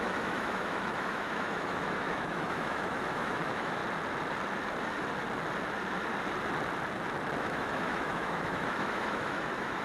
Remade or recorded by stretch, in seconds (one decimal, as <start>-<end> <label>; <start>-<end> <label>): 0.0-3.8 remade; 3.8-7.4 recorded; 7.4-9.8 remade